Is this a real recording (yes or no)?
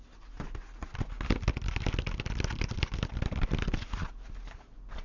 yes